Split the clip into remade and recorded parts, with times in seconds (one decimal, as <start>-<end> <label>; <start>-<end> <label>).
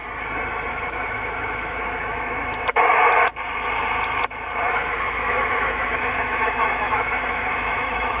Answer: 0.0-0.7 recorded; 0.7-3.0 remade; 3.0-4.7 recorded; 4.7-8.2 remade